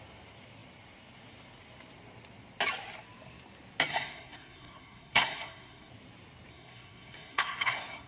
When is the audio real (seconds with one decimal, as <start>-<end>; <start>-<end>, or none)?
0.0-3.9; 5.9-6.5

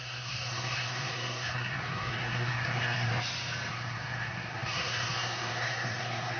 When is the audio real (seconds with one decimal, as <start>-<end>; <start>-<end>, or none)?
3.1-3.7